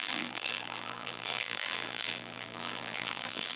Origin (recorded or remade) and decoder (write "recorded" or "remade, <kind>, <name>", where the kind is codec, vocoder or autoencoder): remade, vocoder, BigVGAN v2